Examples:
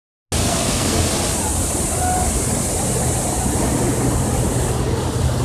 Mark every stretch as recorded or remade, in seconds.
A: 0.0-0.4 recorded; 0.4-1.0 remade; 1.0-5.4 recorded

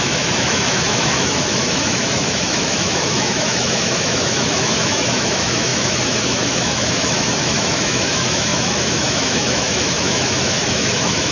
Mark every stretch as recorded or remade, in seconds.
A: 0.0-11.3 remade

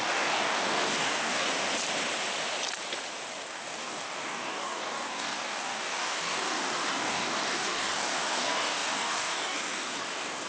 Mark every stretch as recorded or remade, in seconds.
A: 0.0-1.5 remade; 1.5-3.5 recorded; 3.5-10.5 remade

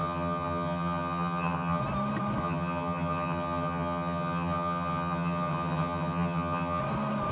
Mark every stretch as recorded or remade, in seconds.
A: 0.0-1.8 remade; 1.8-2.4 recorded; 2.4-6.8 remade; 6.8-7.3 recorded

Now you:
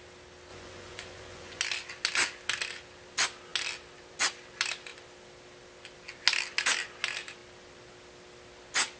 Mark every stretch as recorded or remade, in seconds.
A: 0.0-0.5 recorded; 0.5-1.6 remade; 1.6-9.0 recorded

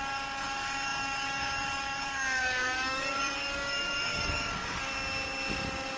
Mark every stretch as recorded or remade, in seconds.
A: 0.0-4.9 remade; 4.9-6.0 recorded

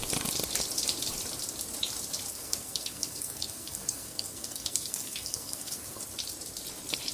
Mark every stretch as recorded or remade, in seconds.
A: 0.0-2.3 recorded; 2.3-6.0 remade; 6.0-7.1 recorded